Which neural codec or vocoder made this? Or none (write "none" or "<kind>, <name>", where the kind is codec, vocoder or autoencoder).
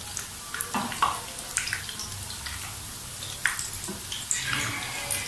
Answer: none